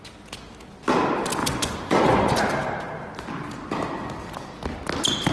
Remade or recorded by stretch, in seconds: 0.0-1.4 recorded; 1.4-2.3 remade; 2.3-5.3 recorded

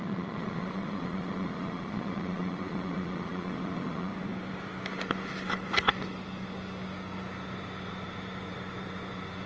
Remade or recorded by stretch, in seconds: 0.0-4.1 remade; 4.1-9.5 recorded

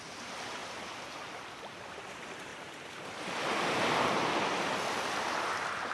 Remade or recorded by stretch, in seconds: 0.0-5.9 recorded

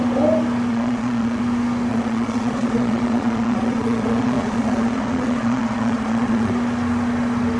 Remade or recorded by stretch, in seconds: 0.0-0.7 recorded; 0.7-1.4 remade; 1.4-1.9 recorded; 1.9-6.5 remade; 6.5-7.6 recorded